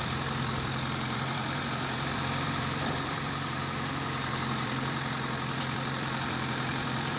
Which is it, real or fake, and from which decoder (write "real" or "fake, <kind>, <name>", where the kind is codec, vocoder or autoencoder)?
fake, vocoder, BigVGAN v2